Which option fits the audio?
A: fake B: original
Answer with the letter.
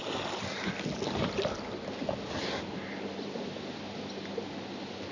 B